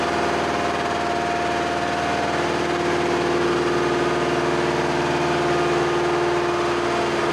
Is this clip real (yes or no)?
yes